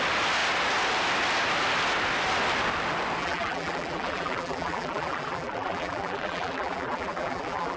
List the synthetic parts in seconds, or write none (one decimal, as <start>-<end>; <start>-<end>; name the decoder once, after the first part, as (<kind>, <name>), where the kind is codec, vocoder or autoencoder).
3.2-7.8 (vocoder, BigVGAN v2)